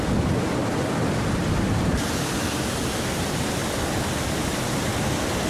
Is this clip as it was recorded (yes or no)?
yes